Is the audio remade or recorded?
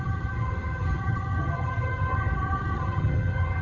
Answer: remade